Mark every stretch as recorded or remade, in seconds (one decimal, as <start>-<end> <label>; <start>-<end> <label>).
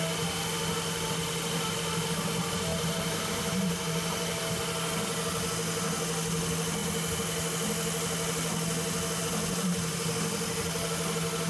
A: 0.0-2.7 recorded; 2.7-4.4 remade; 4.4-11.5 recorded